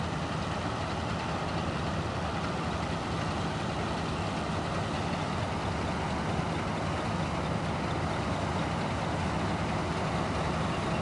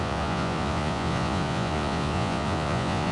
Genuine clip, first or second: first